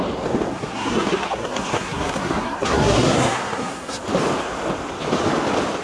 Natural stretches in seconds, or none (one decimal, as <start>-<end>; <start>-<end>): 0.0-0.5; 4.0-5.8